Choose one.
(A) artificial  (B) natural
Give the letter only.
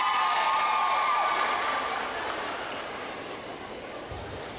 B